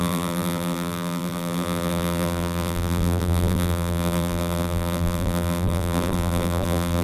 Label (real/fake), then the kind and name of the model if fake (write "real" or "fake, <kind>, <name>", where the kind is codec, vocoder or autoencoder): fake, vocoder, BigVGAN v2